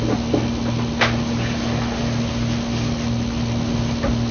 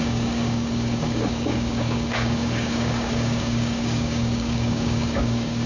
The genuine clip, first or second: first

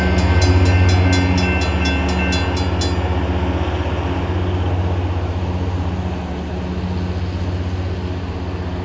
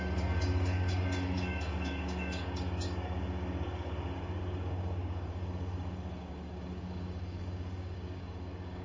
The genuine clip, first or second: first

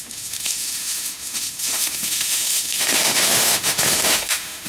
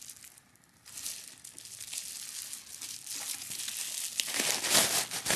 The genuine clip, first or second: second